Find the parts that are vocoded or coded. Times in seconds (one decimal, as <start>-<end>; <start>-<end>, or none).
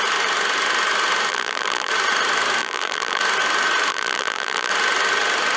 1.3-1.9; 2.6-3.2; 3.9-4.7